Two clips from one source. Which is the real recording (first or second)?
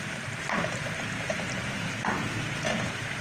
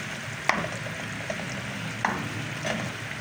second